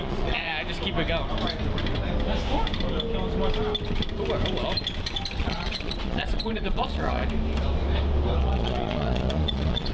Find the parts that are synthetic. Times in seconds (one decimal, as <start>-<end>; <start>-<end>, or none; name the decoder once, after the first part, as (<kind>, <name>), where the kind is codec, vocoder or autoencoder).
0.0-0.5 (vocoder, Vocos); 5.4-7.2; 8.4-9.9